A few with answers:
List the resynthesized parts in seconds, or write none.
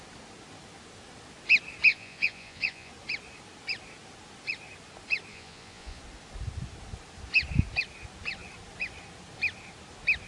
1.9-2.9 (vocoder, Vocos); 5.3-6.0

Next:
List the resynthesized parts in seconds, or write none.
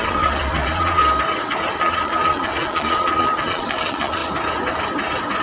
0.0-1.0 (vocoder, Vocos); 1.8-4.2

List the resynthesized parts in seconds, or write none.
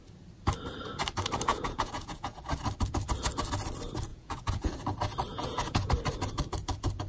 1.5-2.4 (vocoder, Vocos); 4.1-4.7; 5.3-5.9